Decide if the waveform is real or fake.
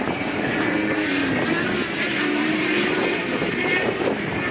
fake